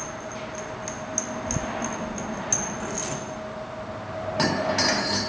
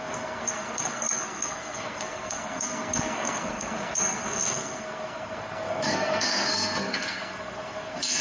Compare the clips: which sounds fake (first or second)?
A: second